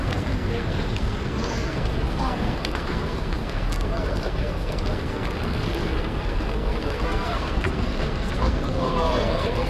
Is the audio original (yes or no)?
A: no